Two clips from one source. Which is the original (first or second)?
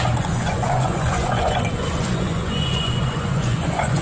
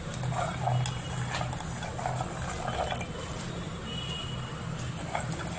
second